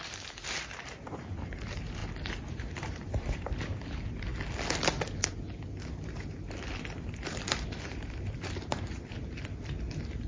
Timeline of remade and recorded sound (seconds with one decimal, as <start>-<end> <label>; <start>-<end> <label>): 0.0-4.3 remade; 4.3-5.8 recorded; 5.8-10.3 remade